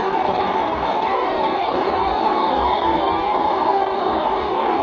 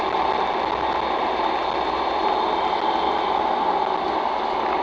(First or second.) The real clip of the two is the second